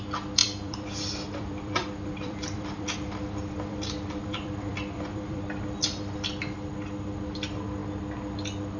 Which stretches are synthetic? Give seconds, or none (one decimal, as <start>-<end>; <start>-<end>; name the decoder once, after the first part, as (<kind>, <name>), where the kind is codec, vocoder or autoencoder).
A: 0.4-5.4 (vocoder, BigVGAN v2)